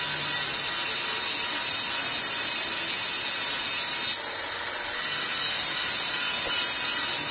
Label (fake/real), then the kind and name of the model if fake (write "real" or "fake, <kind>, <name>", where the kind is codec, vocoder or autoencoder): real